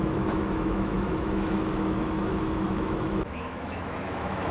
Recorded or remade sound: remade